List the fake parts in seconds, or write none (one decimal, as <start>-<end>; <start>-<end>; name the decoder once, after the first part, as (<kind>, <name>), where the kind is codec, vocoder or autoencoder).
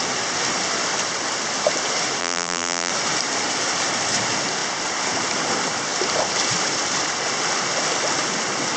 2.2-2.9 (vocoder, BigVGAN v2)